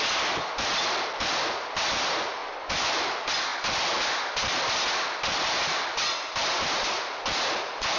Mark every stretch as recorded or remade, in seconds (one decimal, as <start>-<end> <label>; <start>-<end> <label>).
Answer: 0.0-2.4 recorded; 2.4-3.0 remade; 3.0-8.0 recorded